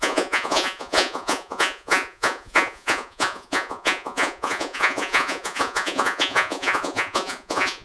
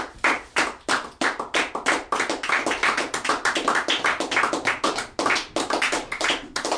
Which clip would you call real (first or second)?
second